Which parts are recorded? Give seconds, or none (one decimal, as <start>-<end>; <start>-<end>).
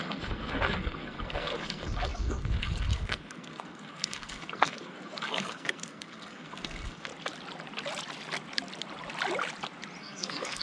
7.1-10.0